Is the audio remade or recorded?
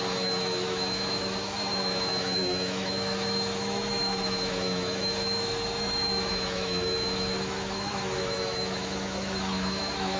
remade